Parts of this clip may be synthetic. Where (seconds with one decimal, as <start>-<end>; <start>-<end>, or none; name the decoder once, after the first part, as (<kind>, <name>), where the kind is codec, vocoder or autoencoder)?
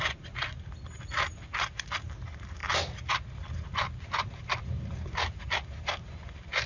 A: none